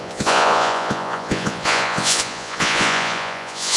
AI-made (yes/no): yes